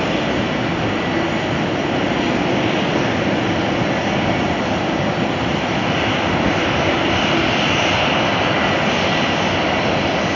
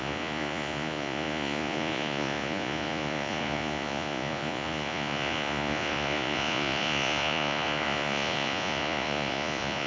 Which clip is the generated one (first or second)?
second